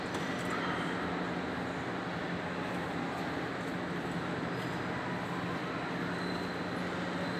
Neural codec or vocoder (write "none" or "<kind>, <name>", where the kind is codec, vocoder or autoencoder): none